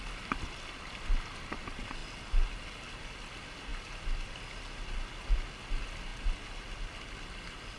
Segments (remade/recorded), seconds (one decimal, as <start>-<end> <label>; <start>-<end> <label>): 0.0-3.7 recorded; 3.7-4.3 remade; 4.3-7.8 recorded